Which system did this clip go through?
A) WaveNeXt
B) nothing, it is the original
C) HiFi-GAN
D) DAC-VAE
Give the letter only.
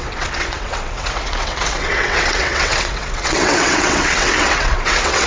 A